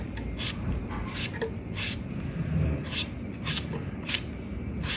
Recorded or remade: recorded